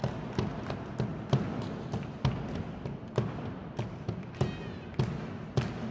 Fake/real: real